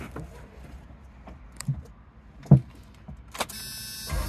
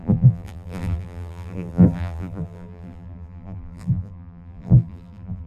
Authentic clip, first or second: first